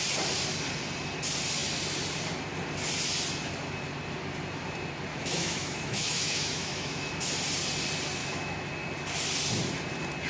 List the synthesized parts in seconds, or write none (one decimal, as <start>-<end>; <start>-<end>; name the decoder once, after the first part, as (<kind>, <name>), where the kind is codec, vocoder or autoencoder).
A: 5.1-7.1 (autoencoder, DAC-VAE); 8.2-8.7

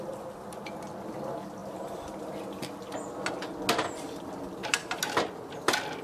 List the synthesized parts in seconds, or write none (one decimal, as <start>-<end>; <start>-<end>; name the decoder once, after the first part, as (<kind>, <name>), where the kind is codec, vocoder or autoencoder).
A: none

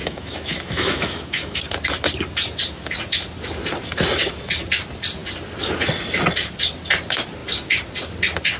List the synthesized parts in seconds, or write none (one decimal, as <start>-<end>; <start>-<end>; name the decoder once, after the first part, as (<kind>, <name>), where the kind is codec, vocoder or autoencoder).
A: 0.0-1.6 (autoencoder, DAC-VAE)

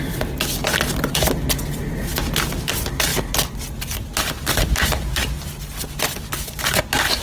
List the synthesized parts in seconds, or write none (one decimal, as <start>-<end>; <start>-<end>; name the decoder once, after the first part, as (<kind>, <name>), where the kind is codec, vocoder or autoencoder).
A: none